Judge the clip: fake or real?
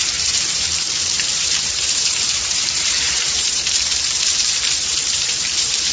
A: fake